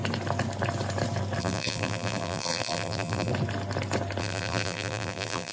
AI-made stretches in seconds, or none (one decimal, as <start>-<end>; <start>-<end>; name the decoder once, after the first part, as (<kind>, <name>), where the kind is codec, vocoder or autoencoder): 1.4-3.3 (vocoder, BigVGAN v2); 4.2-5.5